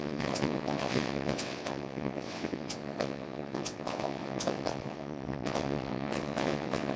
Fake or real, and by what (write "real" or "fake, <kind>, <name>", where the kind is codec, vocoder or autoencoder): fake, vocoder, WaveNeXt